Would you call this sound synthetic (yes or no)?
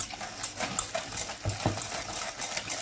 no